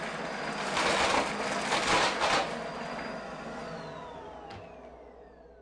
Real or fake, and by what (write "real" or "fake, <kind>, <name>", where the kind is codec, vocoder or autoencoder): real